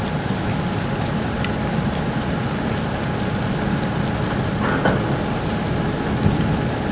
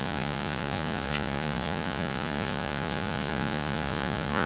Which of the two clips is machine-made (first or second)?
second